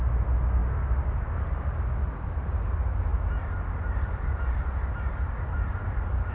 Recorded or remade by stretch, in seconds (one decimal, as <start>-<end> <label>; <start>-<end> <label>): 0.0-6.3 recorded